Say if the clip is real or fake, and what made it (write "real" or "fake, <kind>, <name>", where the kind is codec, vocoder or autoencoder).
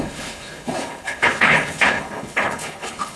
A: fake, codec, HILCodec